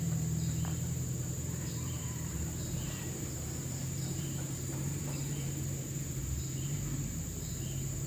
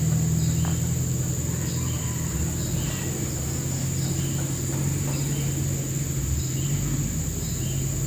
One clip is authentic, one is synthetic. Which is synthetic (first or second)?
first